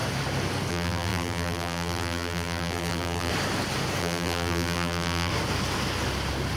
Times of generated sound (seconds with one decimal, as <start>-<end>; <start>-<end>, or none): 0.7-3.3; 4.0-5.3